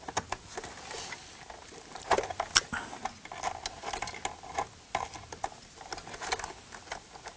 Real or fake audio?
real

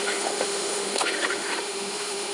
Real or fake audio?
fake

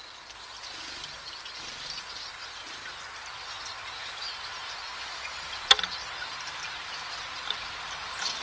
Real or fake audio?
real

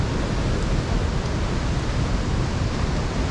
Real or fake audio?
real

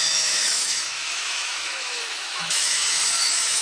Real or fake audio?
fake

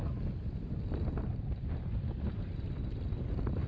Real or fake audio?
real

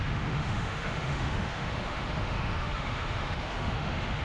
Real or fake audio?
fake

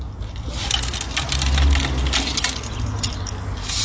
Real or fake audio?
real